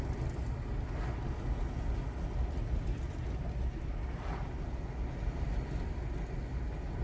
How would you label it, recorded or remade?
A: recorded